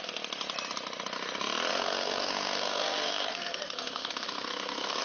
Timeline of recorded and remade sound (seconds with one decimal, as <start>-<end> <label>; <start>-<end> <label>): 0.0-1.7 recorded; 1.7-5.0 remade